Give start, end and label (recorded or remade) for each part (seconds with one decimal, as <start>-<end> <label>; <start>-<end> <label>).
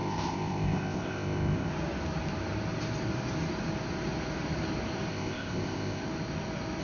0.0-1.7 remade; 1.7-5.1 recorded; 5.1-6.0 remade; 6.0-6.8 recorded